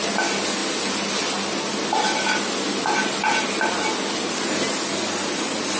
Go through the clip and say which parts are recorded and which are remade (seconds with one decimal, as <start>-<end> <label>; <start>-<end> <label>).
0.0-5.8 recorded